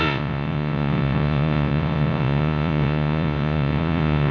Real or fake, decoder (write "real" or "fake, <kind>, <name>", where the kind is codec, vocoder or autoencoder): fake, vocoder, Vocos